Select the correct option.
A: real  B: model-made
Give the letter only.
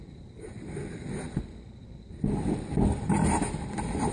A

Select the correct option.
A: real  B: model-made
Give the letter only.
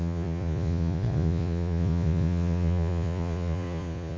B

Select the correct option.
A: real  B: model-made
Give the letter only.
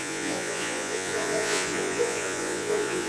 B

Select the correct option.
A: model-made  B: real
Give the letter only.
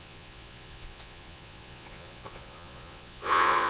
A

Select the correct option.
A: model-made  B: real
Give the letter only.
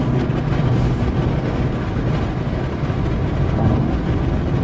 B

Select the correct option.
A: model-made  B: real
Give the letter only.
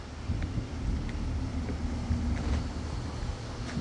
B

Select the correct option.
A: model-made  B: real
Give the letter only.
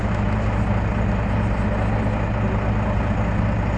B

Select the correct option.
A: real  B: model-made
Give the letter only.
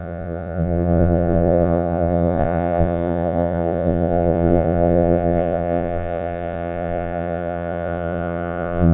B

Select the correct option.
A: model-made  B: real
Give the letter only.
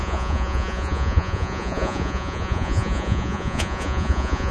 A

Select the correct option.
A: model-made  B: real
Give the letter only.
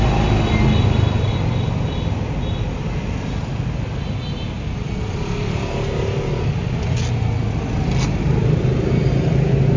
B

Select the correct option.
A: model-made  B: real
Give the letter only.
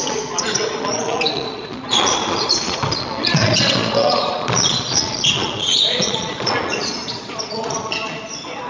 A